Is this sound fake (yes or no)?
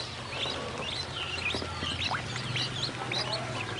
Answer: no